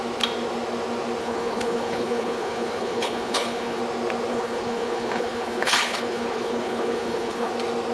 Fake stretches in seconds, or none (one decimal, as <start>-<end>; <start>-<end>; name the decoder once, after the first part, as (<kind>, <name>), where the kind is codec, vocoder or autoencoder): 1.2-3.8 (codec, HILCodec); 4.3-7.5